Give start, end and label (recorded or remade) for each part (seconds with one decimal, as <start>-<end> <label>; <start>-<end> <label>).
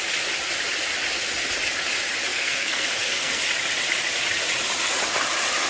0.0-2.3 recorded; 2.3-3.4 remade; 3.4-5.7 recorded